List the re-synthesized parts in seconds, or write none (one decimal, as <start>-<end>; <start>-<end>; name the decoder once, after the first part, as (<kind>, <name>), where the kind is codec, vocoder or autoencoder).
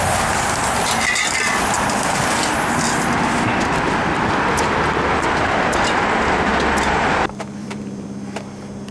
7.6-8.9 (vocoder, BigVGAN v2)